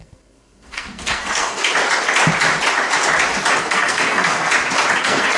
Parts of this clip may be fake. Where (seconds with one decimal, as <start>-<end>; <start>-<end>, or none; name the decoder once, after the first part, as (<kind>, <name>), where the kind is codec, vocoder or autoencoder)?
0.0-1.6 (codec, SNAC); 3.6-4.5; 5.0-5.4